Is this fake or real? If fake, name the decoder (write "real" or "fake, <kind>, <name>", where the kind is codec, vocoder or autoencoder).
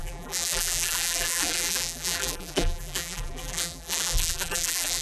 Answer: fake, vocoder, BigVGAN v2